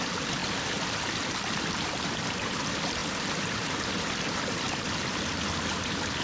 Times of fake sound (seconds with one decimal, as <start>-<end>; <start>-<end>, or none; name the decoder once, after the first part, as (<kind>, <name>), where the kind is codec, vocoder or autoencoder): none